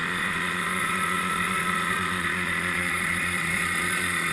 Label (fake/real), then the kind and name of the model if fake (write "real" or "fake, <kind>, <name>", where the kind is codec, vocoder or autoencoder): fake, vocoder, Vocos